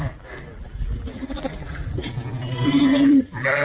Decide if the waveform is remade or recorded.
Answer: remade